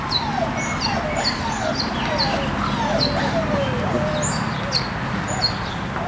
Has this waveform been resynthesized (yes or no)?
no